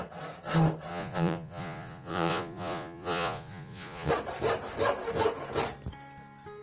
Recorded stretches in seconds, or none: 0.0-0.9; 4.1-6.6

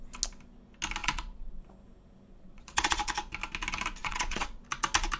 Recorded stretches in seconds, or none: 0.0-1.0; 1.6-2.3; 3.1-4.0; 4.6-5.2